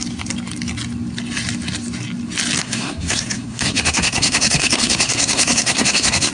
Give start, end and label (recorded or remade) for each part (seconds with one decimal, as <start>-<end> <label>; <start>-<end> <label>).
0.0-2.6 recorded; 2.6-6.3 remade